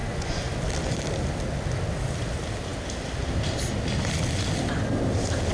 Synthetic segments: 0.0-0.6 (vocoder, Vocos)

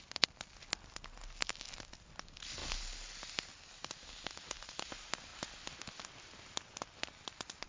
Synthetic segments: none

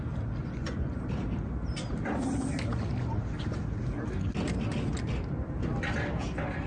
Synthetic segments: 0.4-1.0 (vocoder, Vocos)

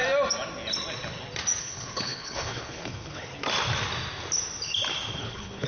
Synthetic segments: 1.6-3.3 (codec, HILCodec); 5.2-5.7

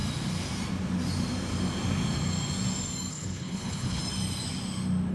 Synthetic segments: 3.1-4.0 (codec, HILCodec)

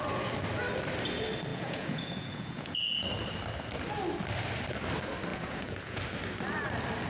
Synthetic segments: 1.5-3.1 (vocoder, Vocos); 5.3-6.0

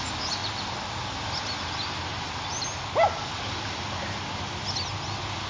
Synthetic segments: none